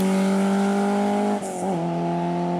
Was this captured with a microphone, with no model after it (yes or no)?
yes